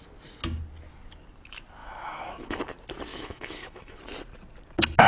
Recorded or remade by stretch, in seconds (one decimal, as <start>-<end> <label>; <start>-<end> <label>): 0.0-1.8 recorded; 1.8-2.6 remade; 2.6-3.1 recorded; 3.1-4.0 remade; 4.0-5.1 recorded

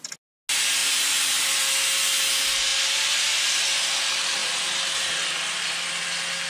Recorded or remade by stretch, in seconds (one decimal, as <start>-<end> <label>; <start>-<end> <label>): 0.0-0.8 recorded; 0.8-1.6 remade; 1.6-4.4 recorded; 4.4-5.3 remade; 5.3-6.5 recorded